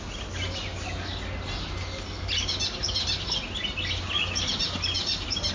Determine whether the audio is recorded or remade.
recorded